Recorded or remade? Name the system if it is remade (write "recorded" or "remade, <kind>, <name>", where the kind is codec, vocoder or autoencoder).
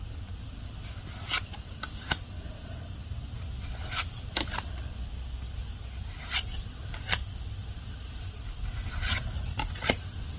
recorded